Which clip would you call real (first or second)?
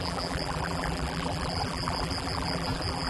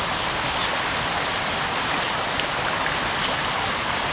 second